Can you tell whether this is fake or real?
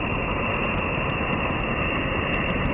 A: real